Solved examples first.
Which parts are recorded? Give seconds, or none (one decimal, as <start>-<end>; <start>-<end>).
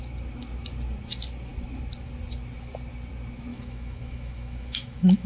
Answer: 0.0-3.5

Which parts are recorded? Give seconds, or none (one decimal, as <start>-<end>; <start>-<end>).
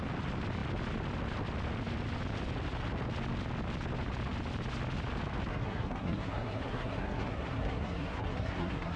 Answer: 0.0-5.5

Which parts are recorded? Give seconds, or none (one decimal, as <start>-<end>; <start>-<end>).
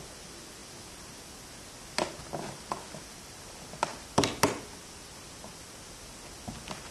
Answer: 0.0-6.9